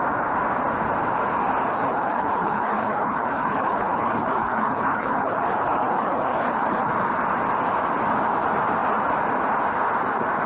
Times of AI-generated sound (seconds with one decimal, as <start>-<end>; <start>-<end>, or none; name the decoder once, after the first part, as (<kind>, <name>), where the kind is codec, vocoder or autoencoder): 1.7-6.9 (codec, HILCodec)

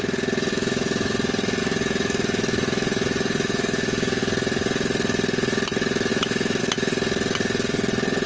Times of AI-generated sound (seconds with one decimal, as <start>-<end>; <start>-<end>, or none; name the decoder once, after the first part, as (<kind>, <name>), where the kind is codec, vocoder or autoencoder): 0.5-1.1 (autoencoder, DAC-VAE); 1.6-4.2; 6.1-6.6